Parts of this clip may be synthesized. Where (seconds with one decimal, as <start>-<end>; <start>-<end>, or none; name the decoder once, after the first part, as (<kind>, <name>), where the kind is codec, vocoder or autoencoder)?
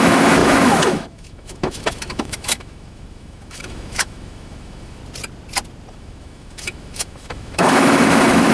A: 0.0-5.0 (autoencoder, DAC-VAE); 5.9-8.5